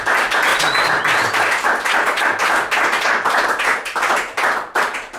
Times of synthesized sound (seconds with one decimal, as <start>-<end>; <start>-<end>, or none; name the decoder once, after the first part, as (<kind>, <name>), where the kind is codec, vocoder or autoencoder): none